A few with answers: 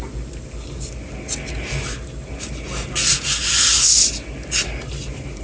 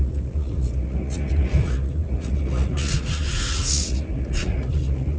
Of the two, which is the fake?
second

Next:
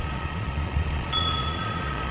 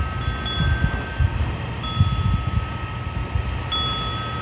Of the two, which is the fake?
first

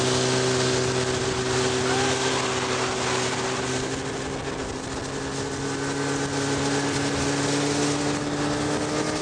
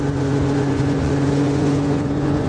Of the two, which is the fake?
second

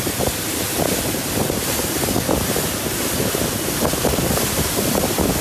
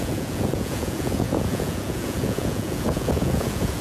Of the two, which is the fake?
second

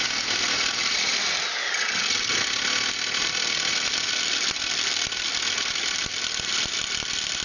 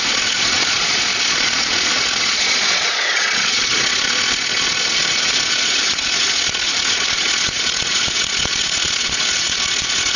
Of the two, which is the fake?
second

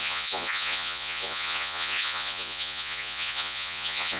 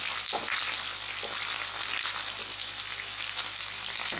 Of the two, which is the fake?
first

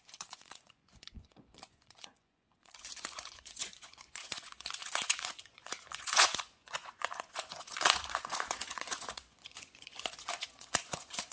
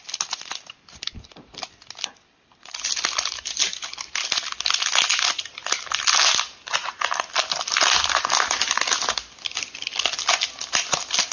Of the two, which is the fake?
first